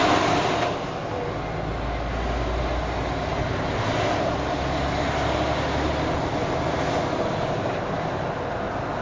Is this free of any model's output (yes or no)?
yes